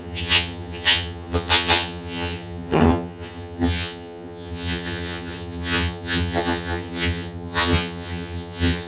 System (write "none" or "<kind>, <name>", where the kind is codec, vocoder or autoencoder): vocoder, HiFi-GAN